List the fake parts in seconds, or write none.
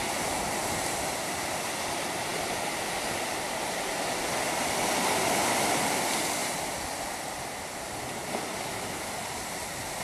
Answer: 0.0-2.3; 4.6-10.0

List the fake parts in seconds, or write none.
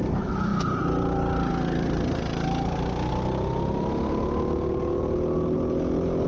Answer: none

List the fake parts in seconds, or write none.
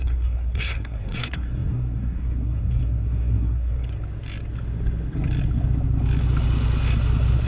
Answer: 0.0-3.9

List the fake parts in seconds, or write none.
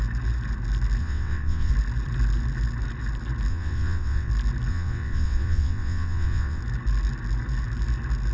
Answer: 1.0-1.7; 3.5-4.3; 4.7-6.6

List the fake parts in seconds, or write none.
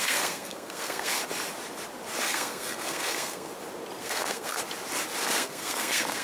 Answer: 0.0-1.2; 2.2-3.5; 4.0-4.6; 5.2-6.2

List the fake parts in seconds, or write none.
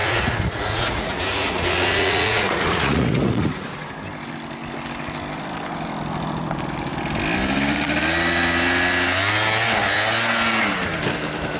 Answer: 0.0-3.9